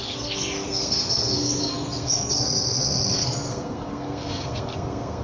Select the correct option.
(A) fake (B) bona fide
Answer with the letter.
A